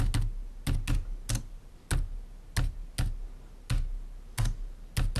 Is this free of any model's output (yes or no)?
yes